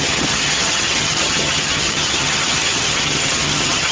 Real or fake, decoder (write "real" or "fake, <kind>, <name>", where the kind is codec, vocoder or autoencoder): fake, vocoder, HiFi-GAN